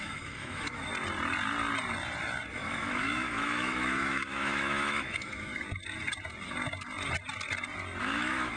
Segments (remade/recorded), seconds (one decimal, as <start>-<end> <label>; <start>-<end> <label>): 0.0-0.9 remade; 0.9-2.5 recorded; 2.5-5.5 remade; 5.5-8.0 recorded; 8.0-8.6 remade